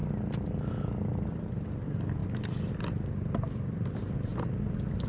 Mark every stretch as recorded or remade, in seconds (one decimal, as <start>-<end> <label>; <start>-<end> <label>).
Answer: 0.0-5.1 recorded